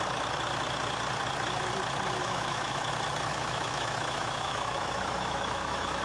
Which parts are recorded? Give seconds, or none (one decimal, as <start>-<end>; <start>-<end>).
0.0-2.2; 2.9-3.3